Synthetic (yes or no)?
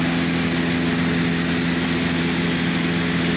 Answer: no